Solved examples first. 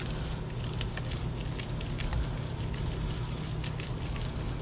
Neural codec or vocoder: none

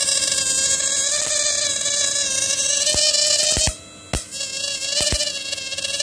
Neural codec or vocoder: none